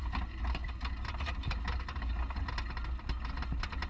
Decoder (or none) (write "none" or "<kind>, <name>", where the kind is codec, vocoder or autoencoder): none